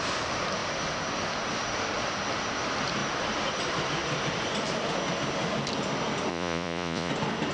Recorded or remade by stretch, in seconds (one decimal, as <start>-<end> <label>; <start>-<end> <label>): 0.0-6.3 recorded; 6.3-7.1 remade; 7.1-7.5 recorded